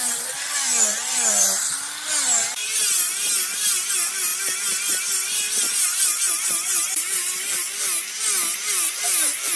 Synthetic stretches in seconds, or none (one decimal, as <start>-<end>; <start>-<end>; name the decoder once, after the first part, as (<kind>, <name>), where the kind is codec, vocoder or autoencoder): 0.0-1.7 (vocoder, BigVGAN v2)